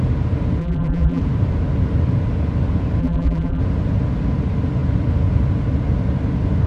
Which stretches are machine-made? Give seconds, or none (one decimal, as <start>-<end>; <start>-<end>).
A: 0.6-1.2; 3.0-3.6